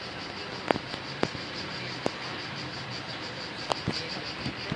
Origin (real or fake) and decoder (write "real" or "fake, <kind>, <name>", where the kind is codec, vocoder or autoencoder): real